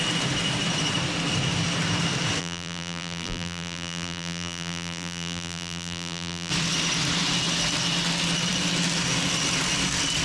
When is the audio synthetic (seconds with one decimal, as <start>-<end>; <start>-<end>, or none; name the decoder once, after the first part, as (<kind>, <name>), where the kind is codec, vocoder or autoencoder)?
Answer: 2.4-6.5 (vocoder, BigVGAN v2)